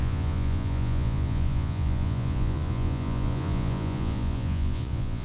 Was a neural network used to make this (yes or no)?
yes